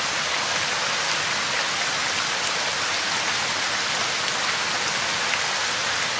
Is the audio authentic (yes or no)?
yes